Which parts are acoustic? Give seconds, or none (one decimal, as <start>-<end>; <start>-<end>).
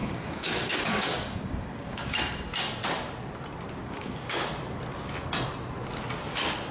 2.1-3.8; 4.5-6.7